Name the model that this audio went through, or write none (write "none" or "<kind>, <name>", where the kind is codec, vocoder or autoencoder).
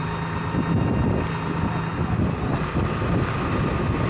none